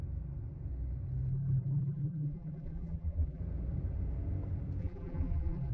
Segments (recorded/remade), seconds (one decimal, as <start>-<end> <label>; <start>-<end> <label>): 0.0-1.3 recorded; 1.3-3.4 remade; 3.4-4.8 recorded; 4.8-5.7 remade